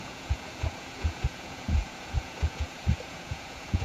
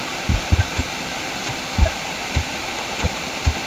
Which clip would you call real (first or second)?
second